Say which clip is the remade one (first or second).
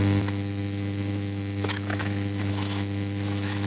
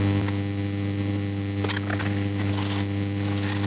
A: first